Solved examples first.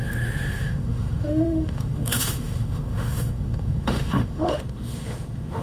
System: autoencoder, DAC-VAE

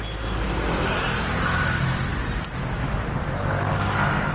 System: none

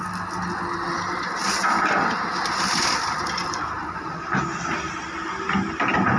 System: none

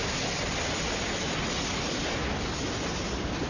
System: none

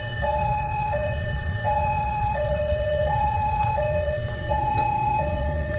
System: vocoder, WaveNeXt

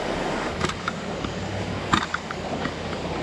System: codec, DAC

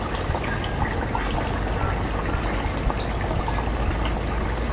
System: none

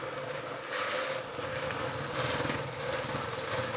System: none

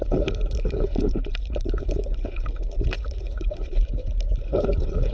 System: codec, HILCodec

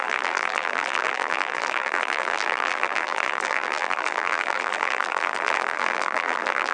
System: vocoder, BigVGAN v2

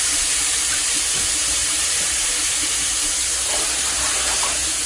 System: vocoder, BigVGAN v2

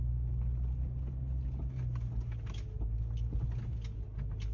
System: none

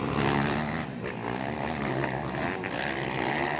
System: none